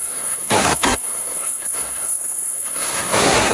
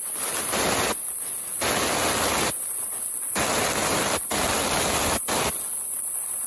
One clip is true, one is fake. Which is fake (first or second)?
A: first